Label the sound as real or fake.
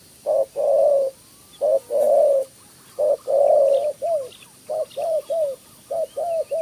real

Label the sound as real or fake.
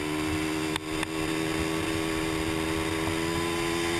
real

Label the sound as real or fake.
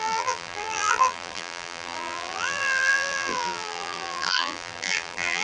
fake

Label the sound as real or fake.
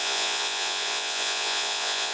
fake